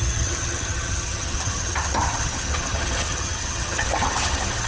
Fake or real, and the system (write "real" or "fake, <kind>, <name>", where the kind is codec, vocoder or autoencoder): fake, vocoder, HiFi-GAN